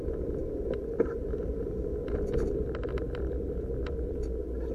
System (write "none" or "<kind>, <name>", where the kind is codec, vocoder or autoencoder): none